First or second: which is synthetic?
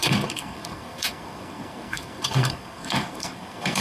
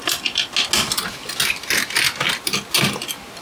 first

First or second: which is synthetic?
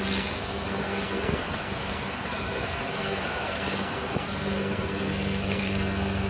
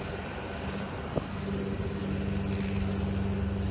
first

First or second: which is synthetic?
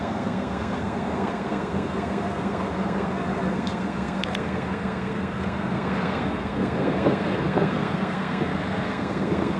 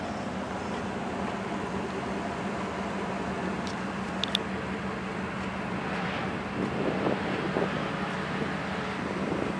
first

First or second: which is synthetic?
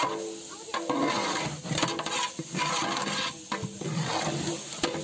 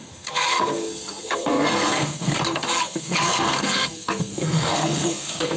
second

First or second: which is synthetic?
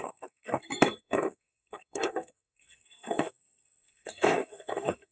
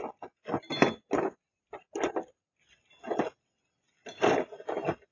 first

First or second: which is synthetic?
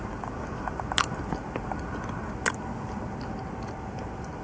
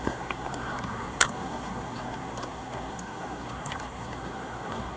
second